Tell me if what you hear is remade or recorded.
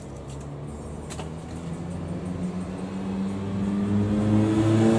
recorded